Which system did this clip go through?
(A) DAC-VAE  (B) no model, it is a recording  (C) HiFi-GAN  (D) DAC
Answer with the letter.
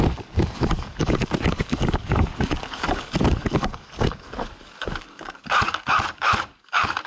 D